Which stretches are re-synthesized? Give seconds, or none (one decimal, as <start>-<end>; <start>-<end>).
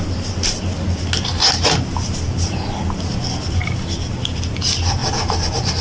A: none